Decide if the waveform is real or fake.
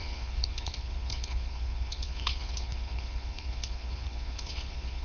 fake